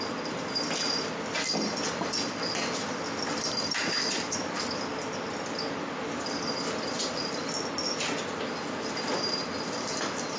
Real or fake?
real